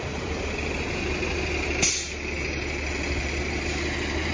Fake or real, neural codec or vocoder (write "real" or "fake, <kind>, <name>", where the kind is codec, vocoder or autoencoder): real